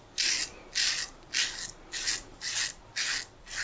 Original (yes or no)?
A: yes